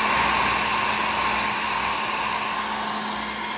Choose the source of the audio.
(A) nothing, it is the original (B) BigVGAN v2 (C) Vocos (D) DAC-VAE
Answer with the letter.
A